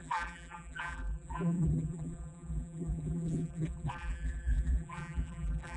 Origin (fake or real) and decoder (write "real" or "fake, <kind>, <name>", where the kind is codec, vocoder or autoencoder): fake, vocoder, BigVGAN v2